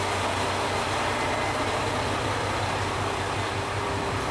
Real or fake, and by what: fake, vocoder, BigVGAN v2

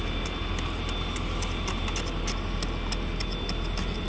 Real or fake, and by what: real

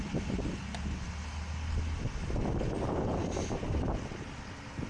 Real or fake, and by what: real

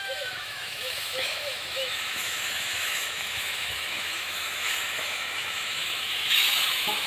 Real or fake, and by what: fake, autoencoder, DAC-VAE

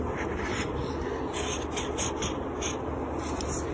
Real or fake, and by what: real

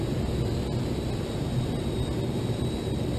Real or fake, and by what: real